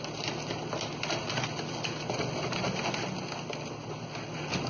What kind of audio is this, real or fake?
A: real